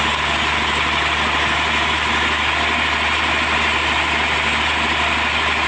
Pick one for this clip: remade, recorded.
recorded